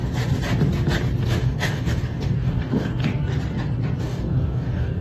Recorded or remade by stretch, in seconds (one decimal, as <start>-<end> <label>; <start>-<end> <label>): 0.0-1.2 recorded; 1.2-3.0 remade; 3.0-4.0 recorded; 4.0-5.0 remade